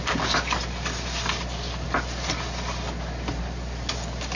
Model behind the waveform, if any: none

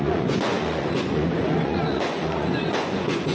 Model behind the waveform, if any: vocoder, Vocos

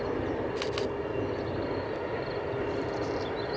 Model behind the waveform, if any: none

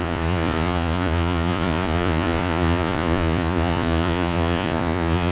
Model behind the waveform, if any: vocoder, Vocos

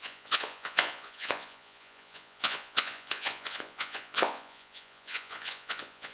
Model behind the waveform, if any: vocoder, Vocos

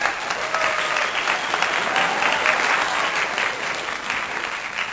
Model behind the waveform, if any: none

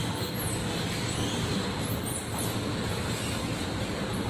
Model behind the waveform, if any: none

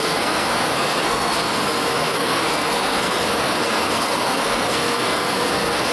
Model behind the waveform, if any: codec, SNAC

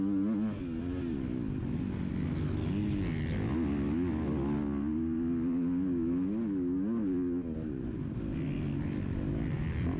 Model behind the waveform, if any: none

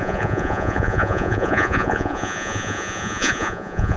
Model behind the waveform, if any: vocoder, Vocos